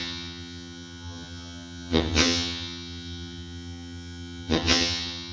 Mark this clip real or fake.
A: fake